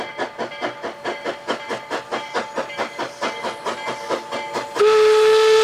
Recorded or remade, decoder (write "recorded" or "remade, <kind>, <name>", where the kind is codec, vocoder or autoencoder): recorded